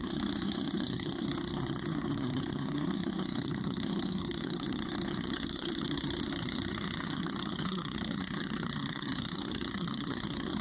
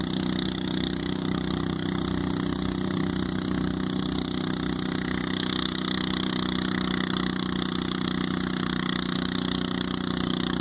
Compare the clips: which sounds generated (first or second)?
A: first